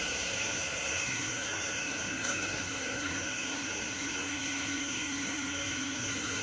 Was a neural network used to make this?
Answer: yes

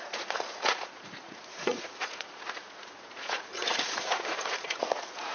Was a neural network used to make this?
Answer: yes